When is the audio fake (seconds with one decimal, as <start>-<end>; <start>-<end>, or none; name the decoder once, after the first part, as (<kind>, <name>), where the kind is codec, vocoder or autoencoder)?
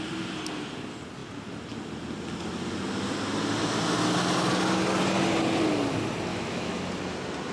6.3-6.8 (autoencoder, DAC-VAE)